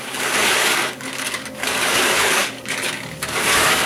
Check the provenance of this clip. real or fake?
fake